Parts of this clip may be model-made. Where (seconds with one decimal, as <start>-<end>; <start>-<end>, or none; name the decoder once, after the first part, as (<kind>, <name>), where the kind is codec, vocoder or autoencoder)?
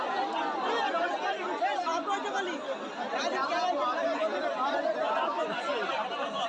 none